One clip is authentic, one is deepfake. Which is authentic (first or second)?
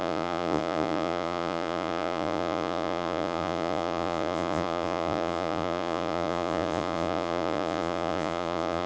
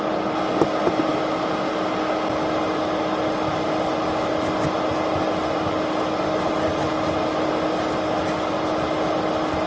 second